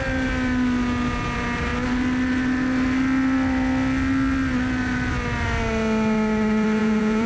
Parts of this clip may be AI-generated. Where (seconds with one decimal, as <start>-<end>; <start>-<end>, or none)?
6.8-7.3